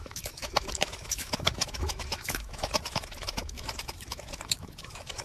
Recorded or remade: remade